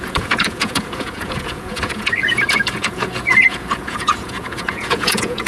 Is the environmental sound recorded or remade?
remade